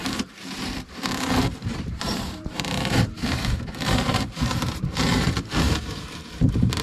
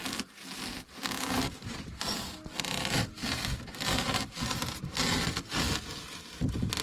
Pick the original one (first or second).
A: second